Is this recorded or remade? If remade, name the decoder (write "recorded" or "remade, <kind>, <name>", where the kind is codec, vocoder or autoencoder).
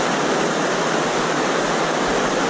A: recorded